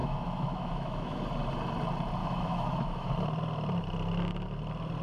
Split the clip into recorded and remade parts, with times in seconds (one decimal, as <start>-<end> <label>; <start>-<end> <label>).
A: 0.0-1.2 remade; 1.2-2.2 recorded; 2.2-3.1 remade; 3.1-5.0 recorded